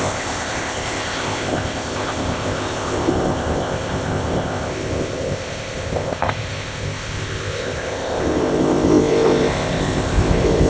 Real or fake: fake